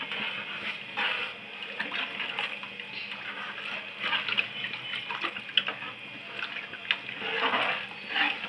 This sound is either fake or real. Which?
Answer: real